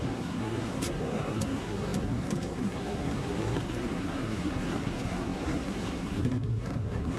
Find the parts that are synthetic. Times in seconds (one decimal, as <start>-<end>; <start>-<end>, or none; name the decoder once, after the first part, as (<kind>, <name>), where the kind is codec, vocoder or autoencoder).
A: 0.0-7.2 (codec, SNAC)